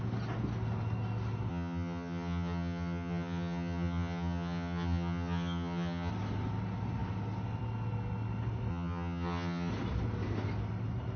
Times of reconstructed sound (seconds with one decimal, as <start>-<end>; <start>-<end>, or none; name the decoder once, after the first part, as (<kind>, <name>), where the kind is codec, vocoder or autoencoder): 1.5-6.1 (vocoder, HiFi-GAN); 8.7-9.7